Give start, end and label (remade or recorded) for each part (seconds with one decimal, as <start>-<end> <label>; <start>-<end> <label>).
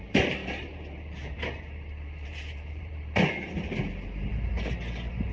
0.0-4.3 remade; 4.3-5.3 recorded